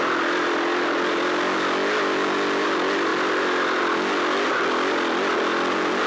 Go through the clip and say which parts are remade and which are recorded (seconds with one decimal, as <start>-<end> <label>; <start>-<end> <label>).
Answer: 0.0-6.1 recorded